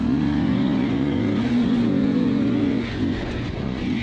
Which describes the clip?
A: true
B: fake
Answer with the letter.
B